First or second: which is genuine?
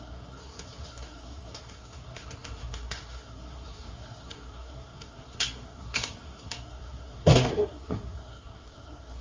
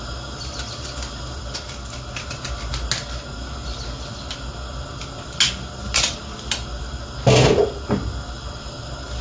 second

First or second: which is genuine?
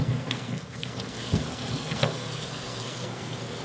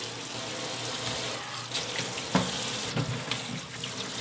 second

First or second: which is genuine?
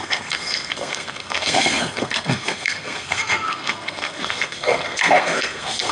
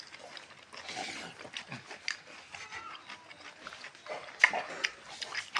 second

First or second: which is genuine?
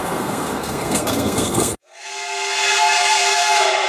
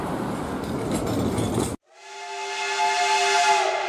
second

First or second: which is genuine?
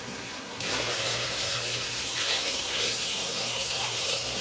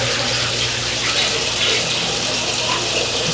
second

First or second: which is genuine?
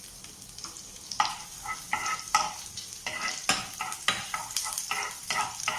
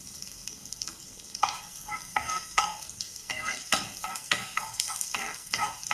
first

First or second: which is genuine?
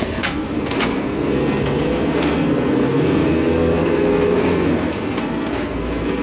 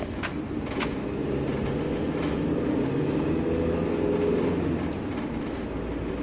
second